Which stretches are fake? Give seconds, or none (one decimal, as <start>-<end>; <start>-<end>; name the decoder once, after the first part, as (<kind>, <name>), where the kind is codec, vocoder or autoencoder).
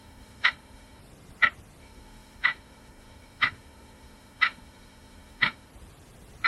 0.0-1.0 (autoencoder, DAC-VAE); 1.8-5.7